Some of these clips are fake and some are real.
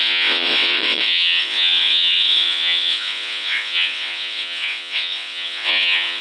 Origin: fake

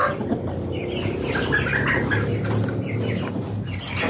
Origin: real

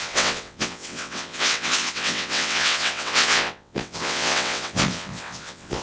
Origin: fake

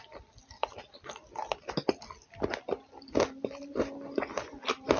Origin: real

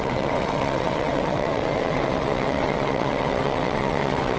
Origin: fake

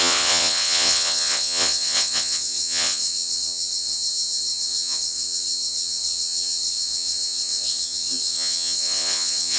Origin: fake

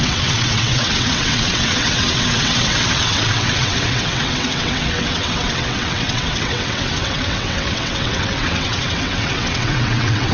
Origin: fake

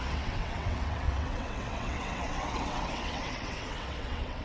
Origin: fake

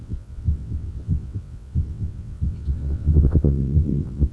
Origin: fake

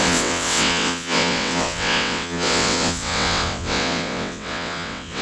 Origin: fake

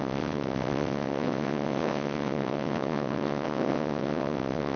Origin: fake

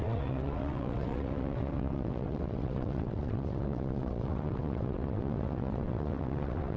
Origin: fake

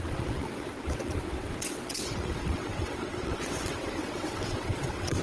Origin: fake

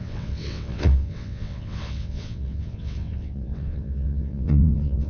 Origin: fake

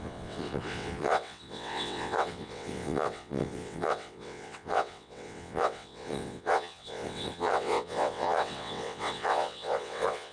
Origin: fake